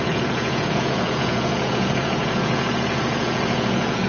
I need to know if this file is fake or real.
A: fake